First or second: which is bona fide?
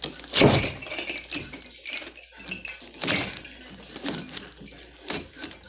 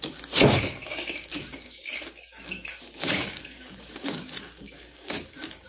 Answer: first